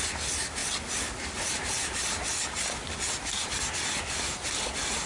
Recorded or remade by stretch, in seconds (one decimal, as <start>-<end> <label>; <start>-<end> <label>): 0.0-5.1 recorded